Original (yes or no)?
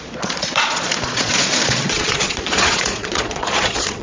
no